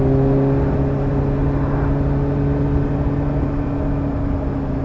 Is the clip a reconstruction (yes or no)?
no